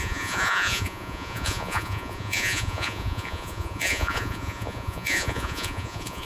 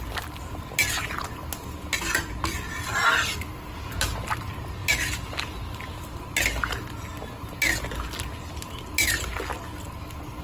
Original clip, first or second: second